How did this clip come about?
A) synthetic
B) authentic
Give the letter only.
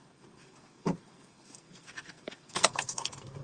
A